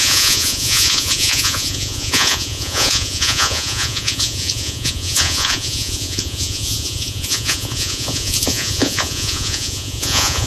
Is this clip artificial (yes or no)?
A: yes